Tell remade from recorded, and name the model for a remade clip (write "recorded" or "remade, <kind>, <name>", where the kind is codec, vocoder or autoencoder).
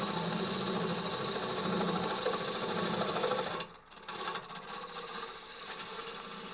recorded